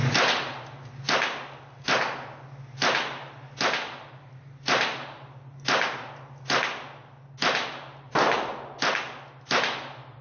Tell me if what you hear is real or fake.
real